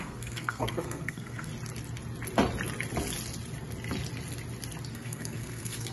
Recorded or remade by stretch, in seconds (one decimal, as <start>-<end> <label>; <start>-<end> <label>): 0.0-1.5 remade; 1.5-4.9 recorded; 4.9-5.9 remade